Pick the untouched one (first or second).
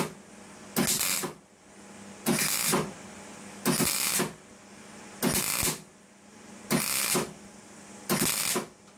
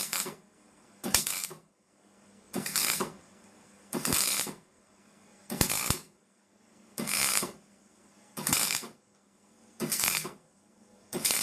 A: first